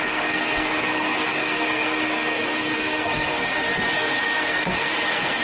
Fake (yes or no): yes